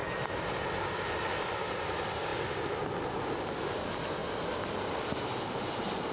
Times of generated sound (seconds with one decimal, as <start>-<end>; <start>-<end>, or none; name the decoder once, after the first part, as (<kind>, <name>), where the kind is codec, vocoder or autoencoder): none